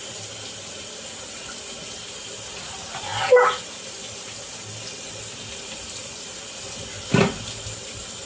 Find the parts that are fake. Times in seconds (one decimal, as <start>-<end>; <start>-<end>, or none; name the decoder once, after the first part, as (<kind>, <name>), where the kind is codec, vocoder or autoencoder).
none